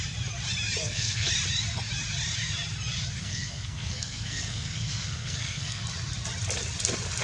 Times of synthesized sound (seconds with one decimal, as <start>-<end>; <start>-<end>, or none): 0.8-1.3; 3.2-5.8